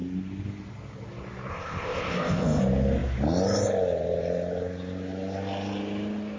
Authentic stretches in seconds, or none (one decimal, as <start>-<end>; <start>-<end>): 0.0-1.5; 2.6-6.4